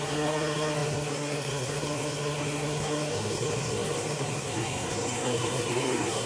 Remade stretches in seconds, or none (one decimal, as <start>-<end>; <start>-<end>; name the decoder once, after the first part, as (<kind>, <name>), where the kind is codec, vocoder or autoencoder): 0.0-6.3 (codec, SNAC)